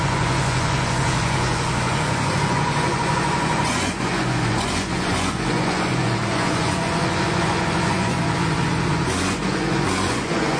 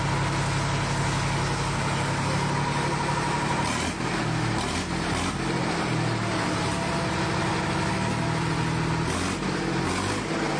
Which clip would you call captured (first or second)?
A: second